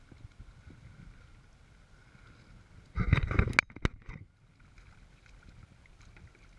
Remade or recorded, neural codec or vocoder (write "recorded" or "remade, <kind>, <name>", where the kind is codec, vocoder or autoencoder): recorded